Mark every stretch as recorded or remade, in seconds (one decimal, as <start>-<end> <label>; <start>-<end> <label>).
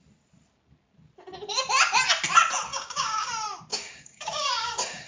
0.0-2.7 recorded; 2.7-3.3 remade; 3.3-3.7 recorded; 3.7-5.1 remade